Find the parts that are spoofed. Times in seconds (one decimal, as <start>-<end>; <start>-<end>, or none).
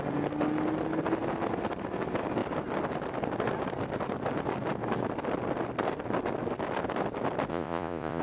7.5-8.2